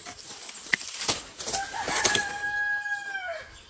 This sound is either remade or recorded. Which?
recorded